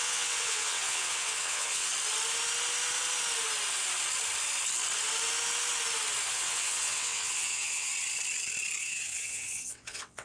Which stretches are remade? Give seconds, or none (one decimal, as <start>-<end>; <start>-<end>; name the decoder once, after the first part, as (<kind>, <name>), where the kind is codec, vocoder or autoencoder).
0.0-1.9 (vocoder, WaveNeXt); 6.3-7.9; 8.8-10.2